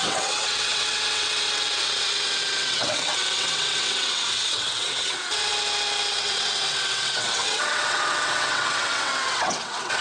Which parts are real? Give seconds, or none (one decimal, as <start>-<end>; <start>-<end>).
5.5-6.1